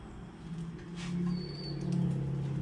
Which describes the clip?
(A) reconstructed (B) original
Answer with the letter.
B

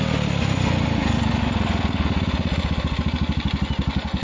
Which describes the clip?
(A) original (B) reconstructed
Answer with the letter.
A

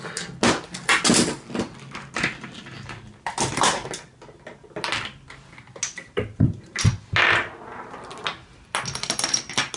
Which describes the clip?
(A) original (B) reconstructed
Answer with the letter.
A